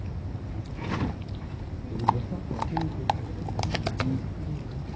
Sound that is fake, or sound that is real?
real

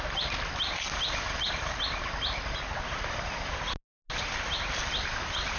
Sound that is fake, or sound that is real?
real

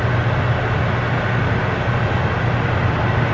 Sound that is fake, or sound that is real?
real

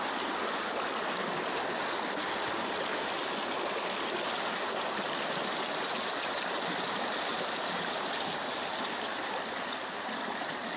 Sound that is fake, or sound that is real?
real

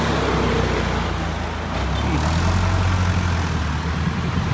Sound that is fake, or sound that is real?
real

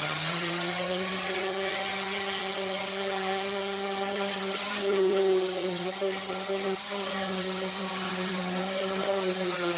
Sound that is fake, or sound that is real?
fake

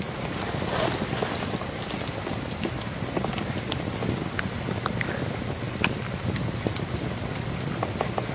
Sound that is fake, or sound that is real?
real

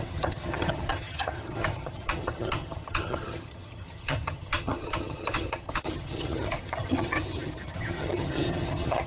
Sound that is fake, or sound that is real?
fake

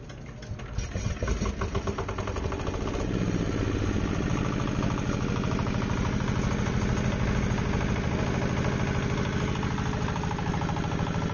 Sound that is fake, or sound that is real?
real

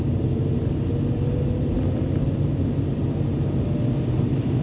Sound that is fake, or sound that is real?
real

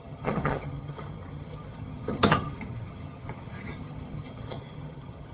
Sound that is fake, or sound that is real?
fake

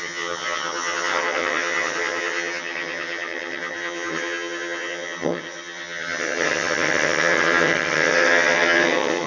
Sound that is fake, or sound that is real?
fake